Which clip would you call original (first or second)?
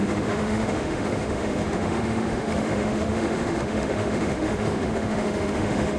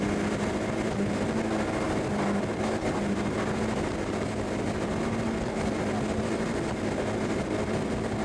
second